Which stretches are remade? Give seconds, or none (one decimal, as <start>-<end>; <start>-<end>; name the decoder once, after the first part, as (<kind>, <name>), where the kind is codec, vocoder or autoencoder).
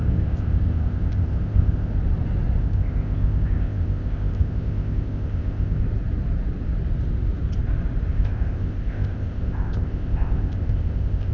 0.0-1.9 (codec, ZipCodec); 2.6-5.8; 8.1-11.3